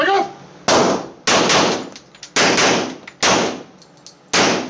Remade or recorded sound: recorded